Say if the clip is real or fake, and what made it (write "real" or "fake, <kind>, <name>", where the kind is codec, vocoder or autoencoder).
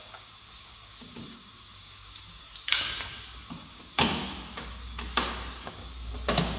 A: fake, codec, DAC